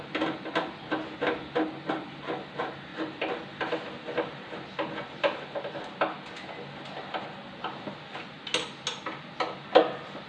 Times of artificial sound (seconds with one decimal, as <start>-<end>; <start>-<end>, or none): none

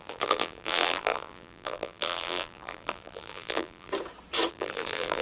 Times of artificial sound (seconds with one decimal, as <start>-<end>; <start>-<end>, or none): 0.0-3.9; 4.5-5.2